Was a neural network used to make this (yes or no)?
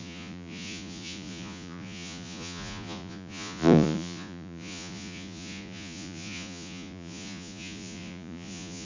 yes